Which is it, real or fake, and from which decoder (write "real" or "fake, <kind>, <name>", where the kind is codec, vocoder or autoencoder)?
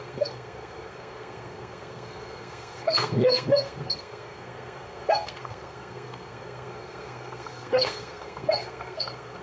fake, codec, SNAC